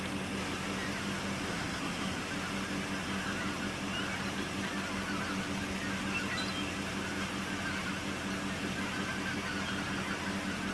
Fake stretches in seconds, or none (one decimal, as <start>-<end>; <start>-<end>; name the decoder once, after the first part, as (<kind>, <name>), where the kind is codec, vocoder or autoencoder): 1.5-2.2 (codec, SNAC)